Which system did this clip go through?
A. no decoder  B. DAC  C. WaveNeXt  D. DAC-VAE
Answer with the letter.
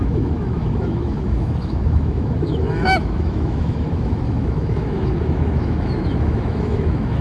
D